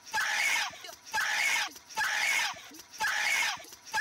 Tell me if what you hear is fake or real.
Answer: fake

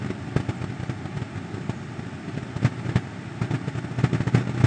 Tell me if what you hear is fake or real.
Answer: real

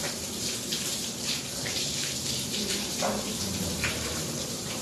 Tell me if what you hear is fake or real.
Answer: fake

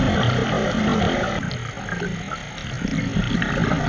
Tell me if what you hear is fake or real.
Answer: real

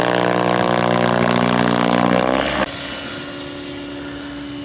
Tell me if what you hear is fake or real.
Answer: real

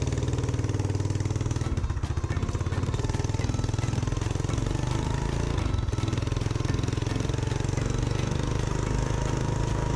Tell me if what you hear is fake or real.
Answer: real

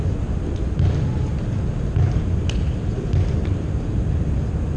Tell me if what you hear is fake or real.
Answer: real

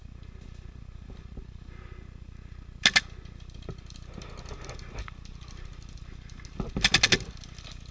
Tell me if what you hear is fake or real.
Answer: real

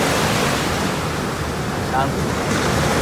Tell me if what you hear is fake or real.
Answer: real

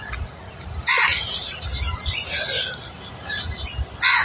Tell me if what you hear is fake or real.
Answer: real